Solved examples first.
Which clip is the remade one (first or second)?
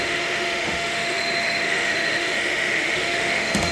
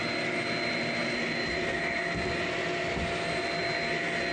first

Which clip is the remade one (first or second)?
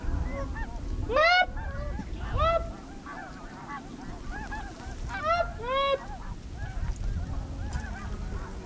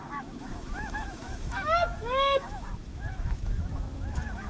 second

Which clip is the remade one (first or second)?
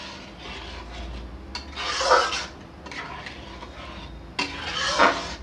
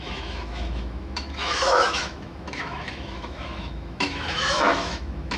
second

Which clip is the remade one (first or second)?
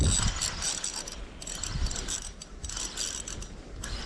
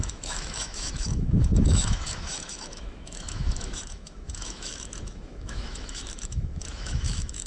second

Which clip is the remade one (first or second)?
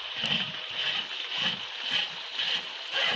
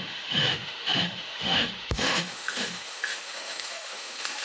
second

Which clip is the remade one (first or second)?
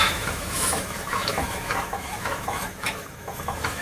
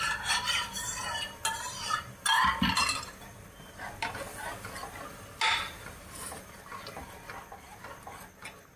first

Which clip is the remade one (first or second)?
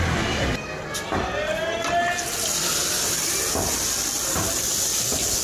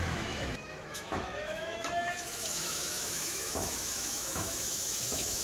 second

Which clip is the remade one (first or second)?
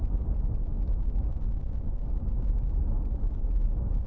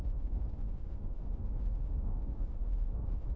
second